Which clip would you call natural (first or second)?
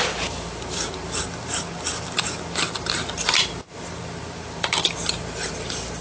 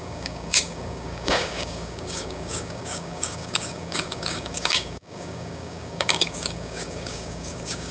first